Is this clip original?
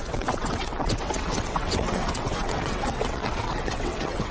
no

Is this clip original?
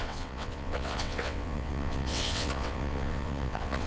no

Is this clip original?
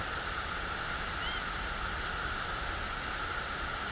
yes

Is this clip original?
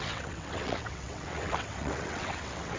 no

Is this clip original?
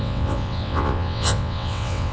no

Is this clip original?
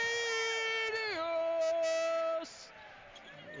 yes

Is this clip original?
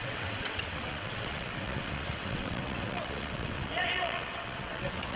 no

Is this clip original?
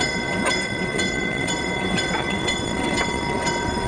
no